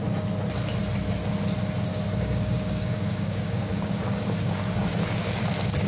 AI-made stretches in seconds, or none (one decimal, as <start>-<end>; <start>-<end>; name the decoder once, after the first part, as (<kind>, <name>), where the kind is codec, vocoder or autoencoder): 1.9-5.4 (codec, DAC)